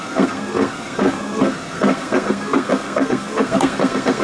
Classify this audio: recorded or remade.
remade